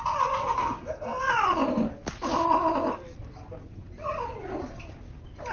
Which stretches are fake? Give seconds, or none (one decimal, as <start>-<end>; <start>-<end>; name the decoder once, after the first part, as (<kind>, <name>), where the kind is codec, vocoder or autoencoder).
0.4-1.2 (codec, SNAC)